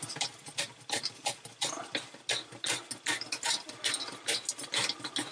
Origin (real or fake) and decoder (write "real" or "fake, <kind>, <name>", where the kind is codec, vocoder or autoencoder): real